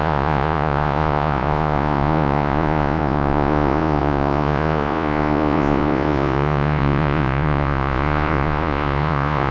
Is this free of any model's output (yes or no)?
no